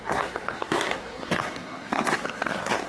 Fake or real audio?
fake